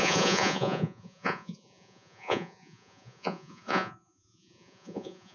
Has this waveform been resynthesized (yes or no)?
yes